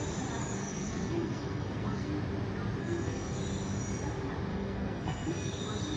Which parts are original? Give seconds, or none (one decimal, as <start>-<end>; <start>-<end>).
0.0-0.4; 2.1-2.8; 3.4-4.5; 5.6-6.0